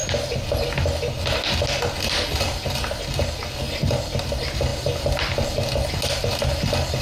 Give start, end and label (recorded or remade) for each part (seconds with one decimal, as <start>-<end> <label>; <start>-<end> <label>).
0.0-7.0 recorded